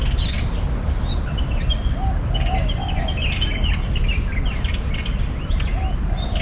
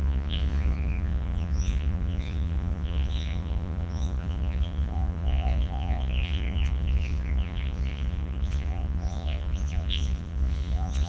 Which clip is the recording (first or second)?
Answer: first